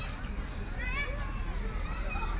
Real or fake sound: fake